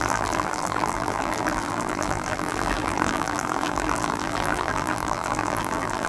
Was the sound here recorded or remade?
remade